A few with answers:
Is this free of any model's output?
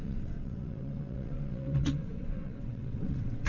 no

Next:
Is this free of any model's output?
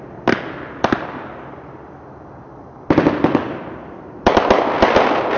yes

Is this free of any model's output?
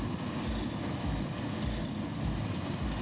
yes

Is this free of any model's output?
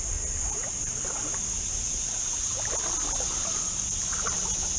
yes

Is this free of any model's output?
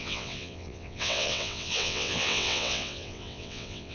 no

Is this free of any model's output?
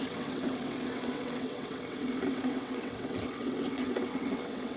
no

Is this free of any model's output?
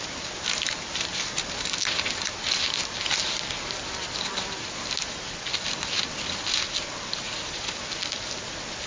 yes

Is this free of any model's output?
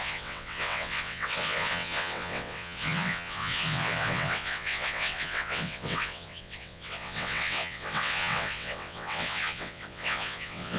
no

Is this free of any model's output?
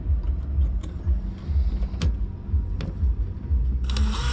yes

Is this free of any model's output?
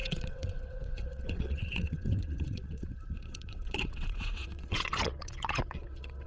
no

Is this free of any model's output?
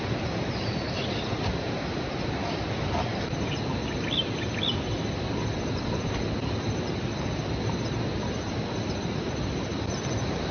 yes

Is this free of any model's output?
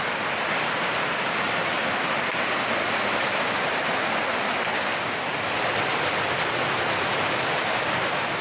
yes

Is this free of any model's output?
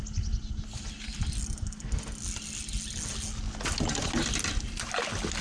yes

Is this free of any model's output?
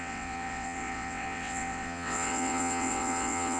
no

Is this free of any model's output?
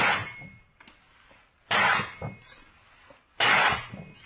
yes